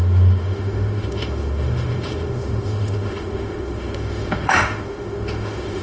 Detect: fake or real fake